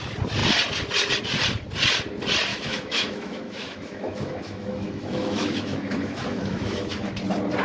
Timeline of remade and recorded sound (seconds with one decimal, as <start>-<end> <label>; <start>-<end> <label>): 0.0-2.5 recorded; 2.5-7.1 remade; 7.1-7.6 recorded